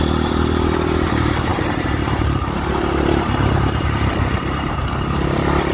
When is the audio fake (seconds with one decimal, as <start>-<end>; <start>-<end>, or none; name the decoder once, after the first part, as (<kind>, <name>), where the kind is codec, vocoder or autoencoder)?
1.5-4.9 (vocoder, BigVGAN v2)